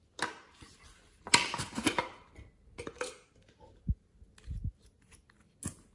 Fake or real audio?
real